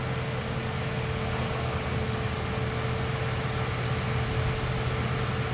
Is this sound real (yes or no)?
yes